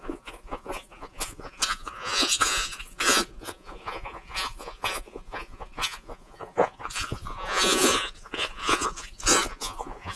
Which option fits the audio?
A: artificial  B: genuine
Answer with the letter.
A